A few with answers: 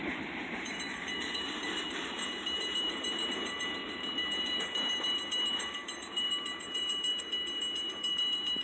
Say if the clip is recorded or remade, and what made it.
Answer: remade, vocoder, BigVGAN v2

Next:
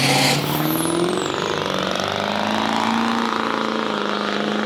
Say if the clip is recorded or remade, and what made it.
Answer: recorded